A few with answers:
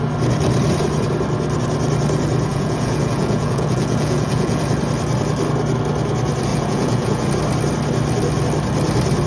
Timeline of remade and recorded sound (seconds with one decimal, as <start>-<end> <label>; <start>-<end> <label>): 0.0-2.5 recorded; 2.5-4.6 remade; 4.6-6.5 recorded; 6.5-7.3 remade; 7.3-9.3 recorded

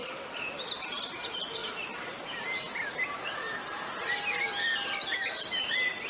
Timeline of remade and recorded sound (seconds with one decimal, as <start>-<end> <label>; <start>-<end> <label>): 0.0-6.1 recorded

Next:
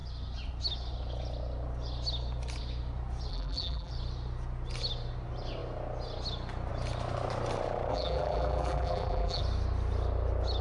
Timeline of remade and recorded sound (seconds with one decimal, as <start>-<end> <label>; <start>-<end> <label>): 0.0-3.3 recorded; 3.3-3.9 remade; 3.9-7.9 recorded; 7.9-9.4 remade; 9.4-10.6 recorded